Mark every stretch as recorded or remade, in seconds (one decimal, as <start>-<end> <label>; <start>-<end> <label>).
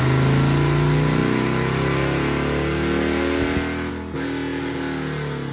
0.0-5.5 recorded